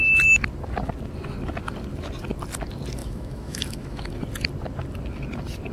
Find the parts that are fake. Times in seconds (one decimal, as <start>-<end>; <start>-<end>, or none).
3.0-4.1